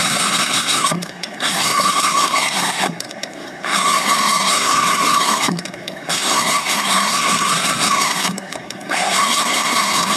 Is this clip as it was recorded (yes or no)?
no